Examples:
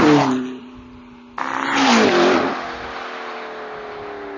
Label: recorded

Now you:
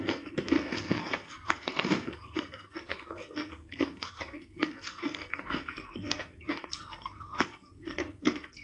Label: remade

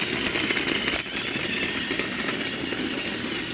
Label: recorded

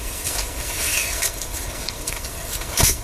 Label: remade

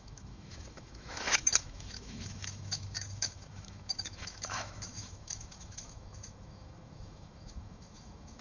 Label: remade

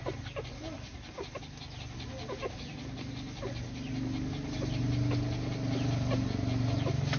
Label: recorded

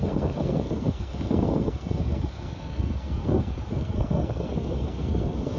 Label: remade